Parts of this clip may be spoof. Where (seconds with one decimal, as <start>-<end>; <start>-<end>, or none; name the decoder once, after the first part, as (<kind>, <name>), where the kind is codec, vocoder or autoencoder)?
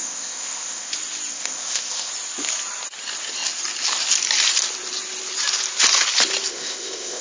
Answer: 0.0-0.9 (codec, ZipCodec); 1.3-2.1; 6.5-7.2